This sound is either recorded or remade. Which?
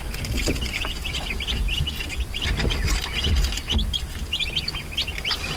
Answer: recorded